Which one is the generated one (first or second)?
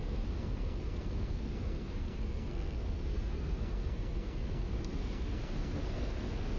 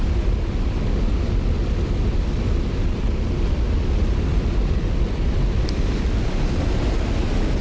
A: first